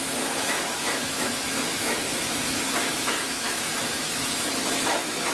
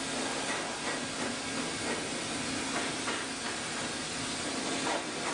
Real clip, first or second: second